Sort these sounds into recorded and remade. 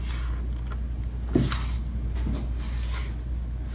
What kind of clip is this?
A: recorded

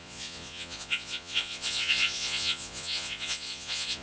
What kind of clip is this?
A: remade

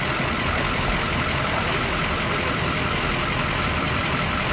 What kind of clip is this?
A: recorded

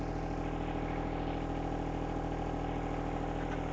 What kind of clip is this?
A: recorded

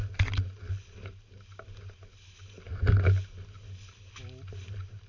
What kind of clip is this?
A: recorded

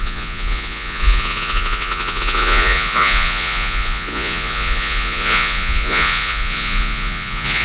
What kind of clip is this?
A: remade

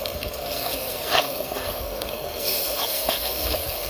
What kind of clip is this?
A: remade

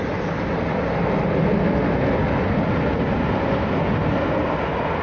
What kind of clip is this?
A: recorded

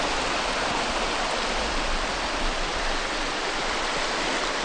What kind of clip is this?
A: recorded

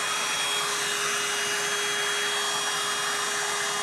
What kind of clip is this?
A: recorded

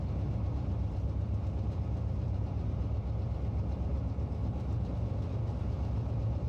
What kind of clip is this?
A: remade